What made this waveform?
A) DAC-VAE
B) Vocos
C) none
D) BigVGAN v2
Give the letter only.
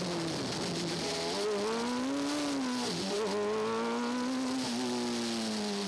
C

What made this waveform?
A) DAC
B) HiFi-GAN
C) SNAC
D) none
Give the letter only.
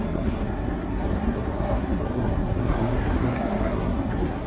C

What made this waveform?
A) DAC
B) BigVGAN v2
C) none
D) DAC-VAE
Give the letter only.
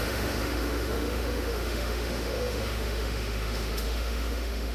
D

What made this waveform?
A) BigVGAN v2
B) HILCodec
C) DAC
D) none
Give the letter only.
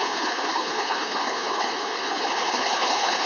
B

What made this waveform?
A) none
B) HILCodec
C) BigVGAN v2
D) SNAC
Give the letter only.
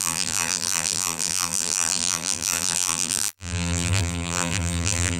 C